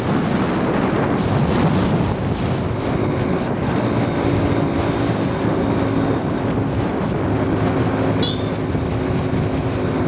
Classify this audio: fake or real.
real